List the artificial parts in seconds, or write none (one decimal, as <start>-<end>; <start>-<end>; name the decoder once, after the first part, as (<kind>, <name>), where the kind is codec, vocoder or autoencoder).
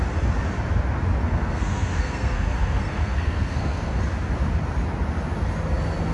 1.2-4.0 (codec, SNAC)